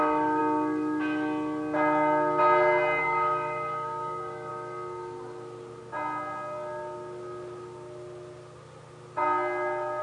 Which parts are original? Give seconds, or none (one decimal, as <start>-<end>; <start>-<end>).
0.4-3.0; 4.5-10.0